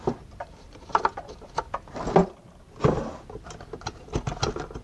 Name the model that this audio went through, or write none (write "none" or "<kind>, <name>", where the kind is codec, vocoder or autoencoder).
none